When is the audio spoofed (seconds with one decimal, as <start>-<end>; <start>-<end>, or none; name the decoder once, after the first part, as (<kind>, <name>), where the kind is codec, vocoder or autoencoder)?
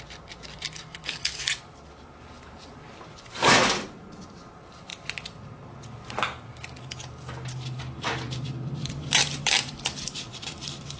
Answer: 0.0-4.9 (vocoder, BigVGAN v2); 7.8-11.0